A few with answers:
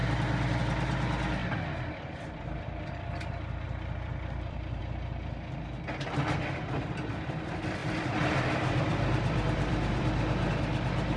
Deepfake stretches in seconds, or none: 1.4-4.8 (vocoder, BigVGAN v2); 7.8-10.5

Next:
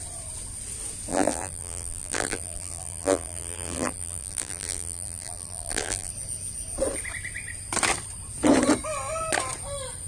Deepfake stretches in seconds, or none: 1.1-6.1 (vocoder, BigVGAN v2)

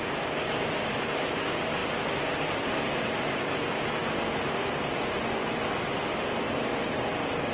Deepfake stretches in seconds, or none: 0.0-1.8 (vocoder, BigVGAN v2); 2.3-7.5

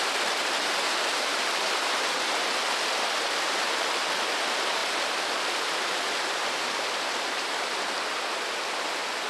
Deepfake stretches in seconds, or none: 1.3-3.2 (vocoder, BigVGAN v2); 4.8-7.8

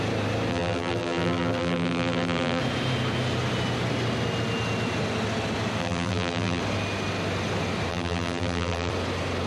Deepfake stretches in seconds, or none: 0.5-2.6 (vocoder, BigVGAN v2); 5.8-6.6; 7.9-8.9

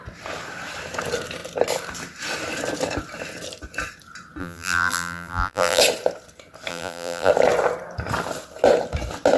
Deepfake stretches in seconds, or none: 4.4-5.8 (vocoder, BigVGAN v2); 6.7-7.3